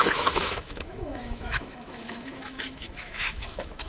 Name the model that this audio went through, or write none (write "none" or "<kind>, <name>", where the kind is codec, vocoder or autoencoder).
autoencoder, DAC-VAE